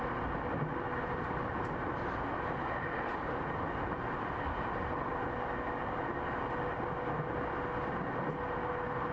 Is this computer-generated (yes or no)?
no